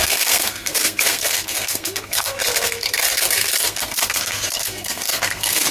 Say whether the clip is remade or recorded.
remade